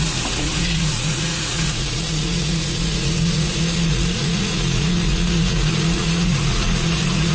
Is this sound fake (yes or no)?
yes